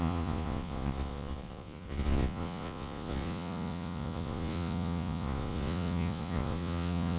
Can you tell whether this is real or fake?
fake